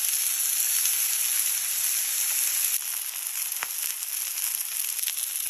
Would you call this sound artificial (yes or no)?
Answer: no